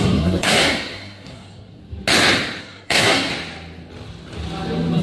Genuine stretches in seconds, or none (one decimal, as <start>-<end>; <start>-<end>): 1.8-2.6; 3.3-5.0